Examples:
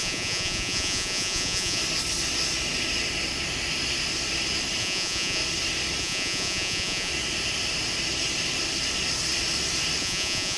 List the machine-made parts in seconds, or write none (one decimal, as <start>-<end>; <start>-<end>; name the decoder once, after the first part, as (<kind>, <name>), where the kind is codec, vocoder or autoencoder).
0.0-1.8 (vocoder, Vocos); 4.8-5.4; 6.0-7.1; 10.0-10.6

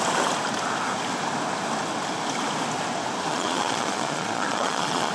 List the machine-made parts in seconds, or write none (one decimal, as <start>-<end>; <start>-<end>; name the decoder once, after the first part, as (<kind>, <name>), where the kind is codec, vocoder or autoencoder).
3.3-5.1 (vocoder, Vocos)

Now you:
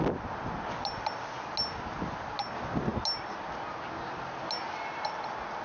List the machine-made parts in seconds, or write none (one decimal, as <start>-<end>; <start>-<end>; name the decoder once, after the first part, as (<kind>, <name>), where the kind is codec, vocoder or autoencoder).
none

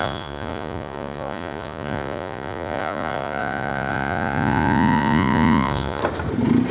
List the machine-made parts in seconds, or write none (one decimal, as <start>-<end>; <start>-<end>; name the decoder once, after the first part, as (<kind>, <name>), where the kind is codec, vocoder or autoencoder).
0.0-6.0 (vocoder, Vocos)

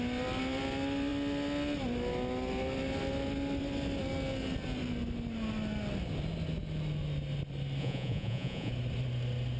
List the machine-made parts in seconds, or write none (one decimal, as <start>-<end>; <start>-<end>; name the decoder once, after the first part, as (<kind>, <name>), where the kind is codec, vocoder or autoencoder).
7.8-8.7 (vocoder, Vocos)

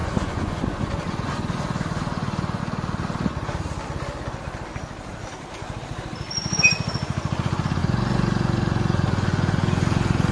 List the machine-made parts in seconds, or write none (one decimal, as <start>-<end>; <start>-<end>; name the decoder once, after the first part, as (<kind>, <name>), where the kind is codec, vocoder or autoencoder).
0.0-2.6 (vocoder, Vocos); 7.8-10.3

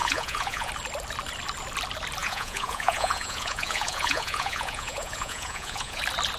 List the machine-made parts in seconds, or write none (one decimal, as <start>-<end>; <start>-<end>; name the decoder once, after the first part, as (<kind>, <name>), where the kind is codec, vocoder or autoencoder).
0.0-0.7 (vocoder, Vocos); 2.2-6.0

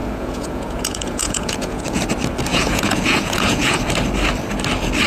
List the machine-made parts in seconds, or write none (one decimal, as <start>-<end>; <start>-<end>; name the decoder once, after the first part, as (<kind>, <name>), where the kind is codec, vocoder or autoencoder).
0.0-2.0 (vocoder, Vocos); 2.5-3.8